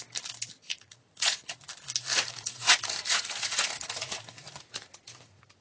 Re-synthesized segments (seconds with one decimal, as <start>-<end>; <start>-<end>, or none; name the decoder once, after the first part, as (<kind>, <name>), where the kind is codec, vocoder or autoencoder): 0.7-1.6 (vocoder, Vocos); 2.1-5.6